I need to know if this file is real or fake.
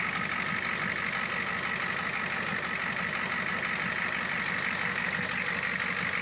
real